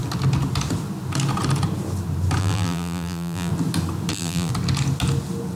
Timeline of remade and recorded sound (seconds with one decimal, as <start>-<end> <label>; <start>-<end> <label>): 0.0-2.4 recorded; 2.4-3.5 remade; 3.5-4.1 recorded; 4.1-4.5 remade; 4.5-5.6 recorded